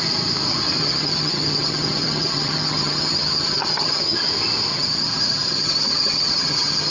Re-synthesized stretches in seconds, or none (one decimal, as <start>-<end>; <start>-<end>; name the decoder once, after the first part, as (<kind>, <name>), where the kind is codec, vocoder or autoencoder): 0.8-4.3 (vocoder, HiFi-GAN); 4.7-6.9